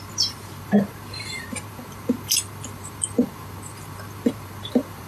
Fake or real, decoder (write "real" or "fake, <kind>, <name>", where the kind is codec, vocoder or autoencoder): fake, vocoder, BigVGAN v2